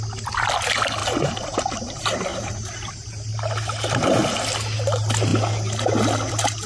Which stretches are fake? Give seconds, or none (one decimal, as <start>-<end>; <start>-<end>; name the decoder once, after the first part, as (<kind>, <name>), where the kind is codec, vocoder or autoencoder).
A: 1.0-1.7 (vocoder, BigVGAN v2); 2.3-2.9